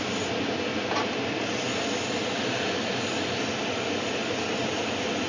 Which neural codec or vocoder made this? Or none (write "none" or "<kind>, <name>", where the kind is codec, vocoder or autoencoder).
none